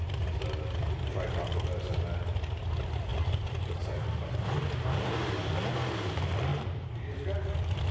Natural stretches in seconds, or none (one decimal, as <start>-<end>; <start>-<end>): 0.0-3.1; 4.7-6.5; 7.2-7.9